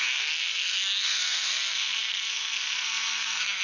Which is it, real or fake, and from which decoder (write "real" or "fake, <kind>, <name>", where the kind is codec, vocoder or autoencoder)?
fake, codec, SNAC